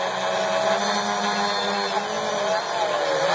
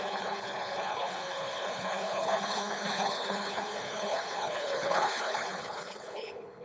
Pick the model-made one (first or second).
second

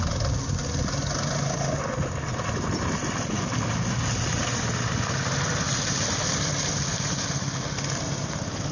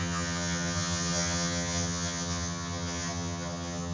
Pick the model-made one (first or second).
second